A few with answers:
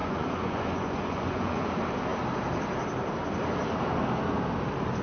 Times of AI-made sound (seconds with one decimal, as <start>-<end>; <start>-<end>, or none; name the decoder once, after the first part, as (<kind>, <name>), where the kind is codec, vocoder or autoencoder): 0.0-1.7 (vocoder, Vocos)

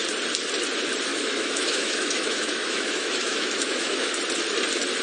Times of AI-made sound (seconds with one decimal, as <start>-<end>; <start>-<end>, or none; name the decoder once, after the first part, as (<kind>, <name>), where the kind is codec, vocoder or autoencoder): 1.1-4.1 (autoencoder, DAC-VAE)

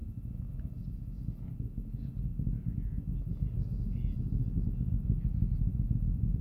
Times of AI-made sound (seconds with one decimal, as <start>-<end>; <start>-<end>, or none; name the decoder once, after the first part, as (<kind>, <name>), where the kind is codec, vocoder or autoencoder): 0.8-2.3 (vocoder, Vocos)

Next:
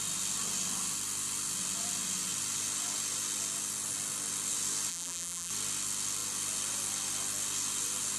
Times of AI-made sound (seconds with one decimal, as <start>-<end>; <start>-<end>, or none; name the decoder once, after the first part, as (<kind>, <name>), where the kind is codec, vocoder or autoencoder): 4.9-5.5 (vocoder, BigVGAN v2)